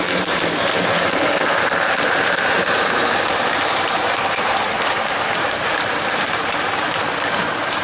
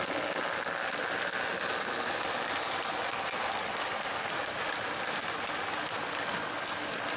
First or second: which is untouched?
second